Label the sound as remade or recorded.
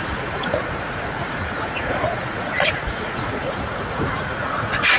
remade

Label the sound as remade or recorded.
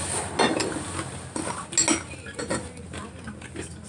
recorded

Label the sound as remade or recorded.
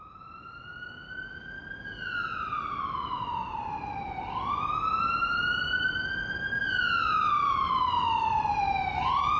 recorded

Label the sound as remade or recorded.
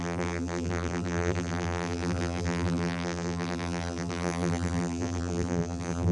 remade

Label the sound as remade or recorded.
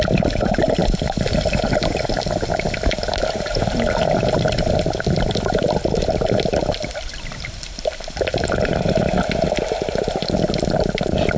remade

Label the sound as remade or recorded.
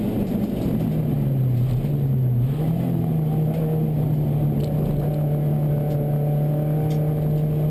recorded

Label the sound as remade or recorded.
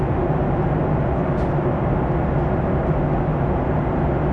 recorded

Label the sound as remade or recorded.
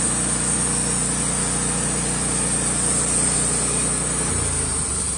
recorded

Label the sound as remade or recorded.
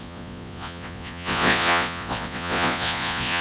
remade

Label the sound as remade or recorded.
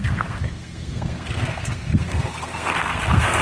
remade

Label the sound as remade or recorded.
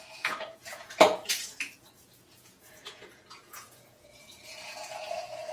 remade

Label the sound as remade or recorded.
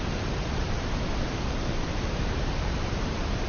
remade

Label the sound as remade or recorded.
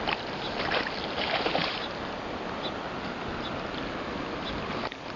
recorded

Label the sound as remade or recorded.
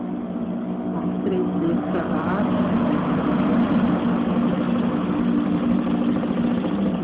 recorded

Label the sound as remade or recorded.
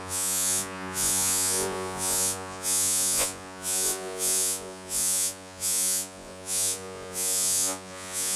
remade